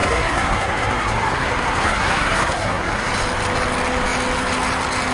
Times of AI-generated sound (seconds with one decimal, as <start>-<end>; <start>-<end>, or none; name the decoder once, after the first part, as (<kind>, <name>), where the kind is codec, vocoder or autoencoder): 0.0-3.1 (codec, SNAC)